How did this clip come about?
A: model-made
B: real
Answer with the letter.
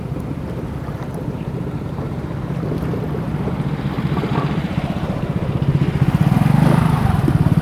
A